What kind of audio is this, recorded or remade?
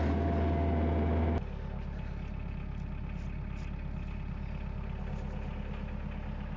recorded